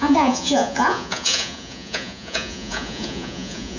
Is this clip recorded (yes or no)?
no